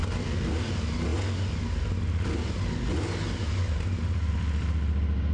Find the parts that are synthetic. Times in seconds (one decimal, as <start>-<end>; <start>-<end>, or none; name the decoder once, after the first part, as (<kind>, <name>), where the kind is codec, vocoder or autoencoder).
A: none